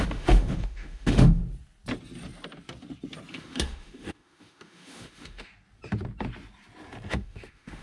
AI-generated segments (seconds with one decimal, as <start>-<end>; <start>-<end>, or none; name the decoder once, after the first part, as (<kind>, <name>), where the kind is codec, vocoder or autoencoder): 0.0-1.4 (autoencoder, DAC-VAE); 3.3-5.5; 7.1-7.8